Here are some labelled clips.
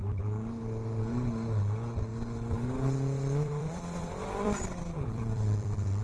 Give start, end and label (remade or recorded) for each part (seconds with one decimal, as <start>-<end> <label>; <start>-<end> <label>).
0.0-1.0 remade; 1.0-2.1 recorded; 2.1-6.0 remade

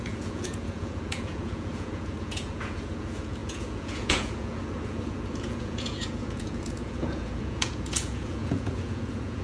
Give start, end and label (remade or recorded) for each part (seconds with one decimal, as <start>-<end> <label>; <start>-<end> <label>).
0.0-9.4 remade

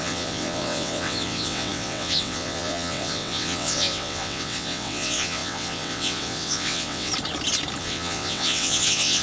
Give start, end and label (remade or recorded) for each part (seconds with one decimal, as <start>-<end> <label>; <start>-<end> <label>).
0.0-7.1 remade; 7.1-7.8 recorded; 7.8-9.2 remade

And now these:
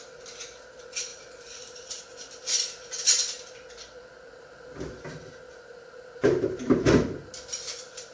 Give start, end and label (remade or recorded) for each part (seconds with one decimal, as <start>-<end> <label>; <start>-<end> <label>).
0.0-1.1 recorded; 1.1-2.0 remade; 2.0-8.1 recorded

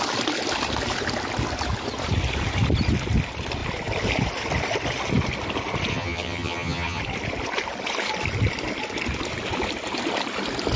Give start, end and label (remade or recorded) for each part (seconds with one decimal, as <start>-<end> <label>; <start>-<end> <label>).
0.0-5.9 recorded; 5.9-7.0 remade; 7.0-10.8 recorded

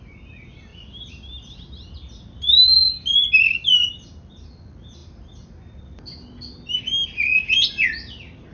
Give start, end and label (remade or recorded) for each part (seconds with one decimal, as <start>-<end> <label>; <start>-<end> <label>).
0.0-8.5 recorded

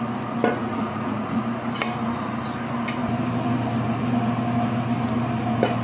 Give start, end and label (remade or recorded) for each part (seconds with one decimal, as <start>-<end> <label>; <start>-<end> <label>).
0.0-0.6 recorded; 0.6-1.4 remade; 1.4-5.8 recorded